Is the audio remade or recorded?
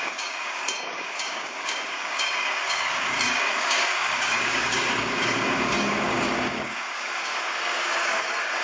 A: remade